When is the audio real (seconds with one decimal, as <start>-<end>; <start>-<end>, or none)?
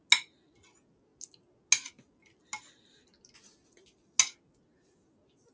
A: 0.0-5.5